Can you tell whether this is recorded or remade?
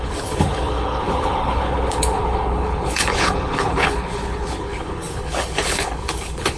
remade